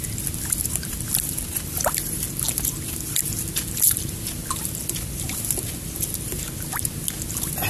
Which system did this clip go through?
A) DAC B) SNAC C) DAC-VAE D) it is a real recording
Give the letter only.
D